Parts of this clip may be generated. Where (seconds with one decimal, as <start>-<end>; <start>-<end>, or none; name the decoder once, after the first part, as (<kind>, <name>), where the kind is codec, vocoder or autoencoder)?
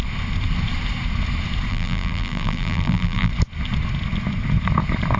1.7-3.3 (vocoder, BigVGAN v2)